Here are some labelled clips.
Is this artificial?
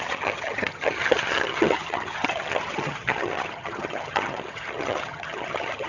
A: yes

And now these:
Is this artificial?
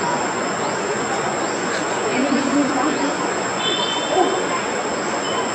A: yes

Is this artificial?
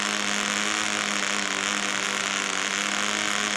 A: no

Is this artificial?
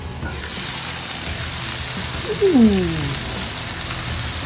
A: no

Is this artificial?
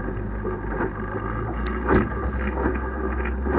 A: no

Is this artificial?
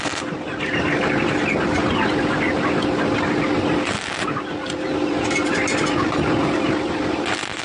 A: no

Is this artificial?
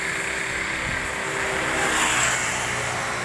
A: no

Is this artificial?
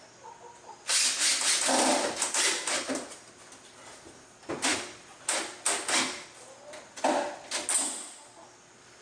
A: no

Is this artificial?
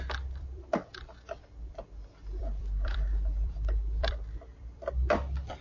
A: yes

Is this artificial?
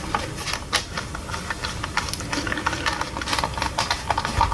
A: no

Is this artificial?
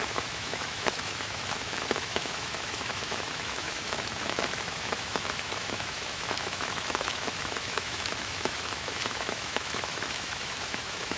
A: yes